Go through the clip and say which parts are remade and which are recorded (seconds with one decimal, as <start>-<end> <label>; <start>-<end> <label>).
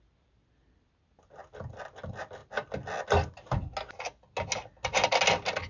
0.0-5.7 recorded